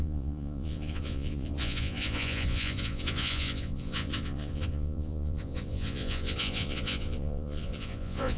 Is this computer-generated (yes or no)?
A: yes